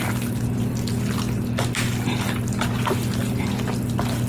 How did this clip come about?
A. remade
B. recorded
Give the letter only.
B